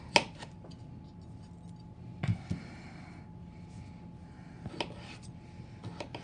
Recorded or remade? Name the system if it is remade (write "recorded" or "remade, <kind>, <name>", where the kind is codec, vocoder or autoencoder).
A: recorded